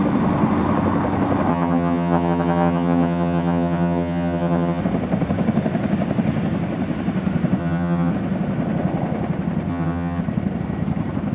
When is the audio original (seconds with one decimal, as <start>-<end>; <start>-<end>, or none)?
0.0-1.5; 4.8-7.6; 8.1-9.7; 10.2-11.3